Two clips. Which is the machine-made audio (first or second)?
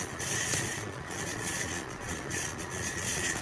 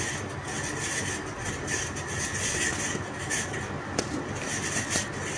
first